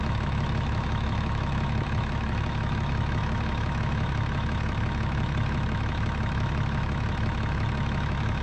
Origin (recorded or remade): remade